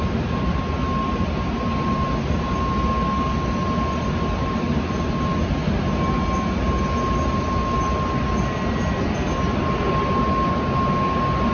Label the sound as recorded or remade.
recorded